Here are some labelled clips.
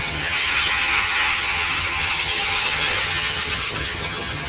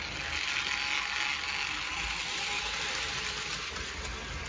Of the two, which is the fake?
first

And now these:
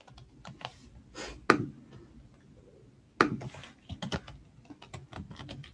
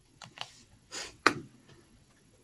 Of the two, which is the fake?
second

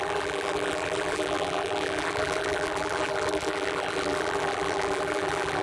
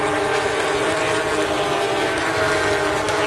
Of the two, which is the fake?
first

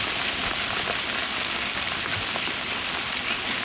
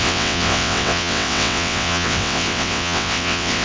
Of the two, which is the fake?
second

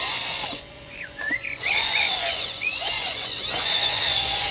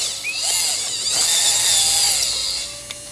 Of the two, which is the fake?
first